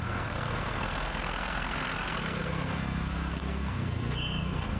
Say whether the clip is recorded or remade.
remade